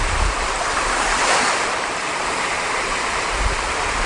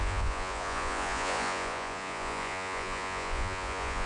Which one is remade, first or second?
second